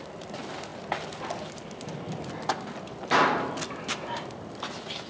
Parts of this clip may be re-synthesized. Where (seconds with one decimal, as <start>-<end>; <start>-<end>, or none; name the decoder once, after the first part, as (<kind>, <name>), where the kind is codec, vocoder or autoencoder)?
none